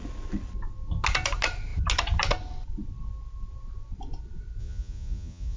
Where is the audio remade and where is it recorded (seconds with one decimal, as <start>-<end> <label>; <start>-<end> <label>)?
0.0-4.6 recorded; 4.6-5.6 remade